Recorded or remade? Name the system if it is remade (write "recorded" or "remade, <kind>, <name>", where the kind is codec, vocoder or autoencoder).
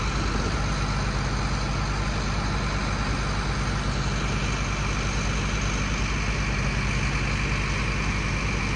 recorded